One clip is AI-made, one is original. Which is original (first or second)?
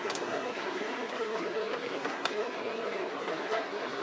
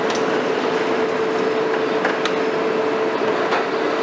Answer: second